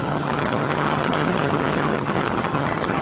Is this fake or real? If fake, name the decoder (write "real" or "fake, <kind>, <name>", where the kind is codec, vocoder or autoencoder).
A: fake, vocoder, HiFi-GAN